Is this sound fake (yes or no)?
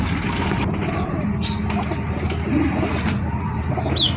no